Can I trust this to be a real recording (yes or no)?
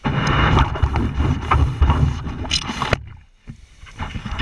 yes